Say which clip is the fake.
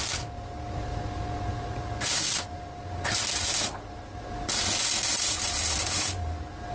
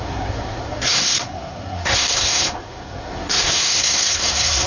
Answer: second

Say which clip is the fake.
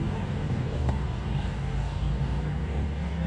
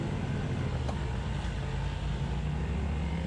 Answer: first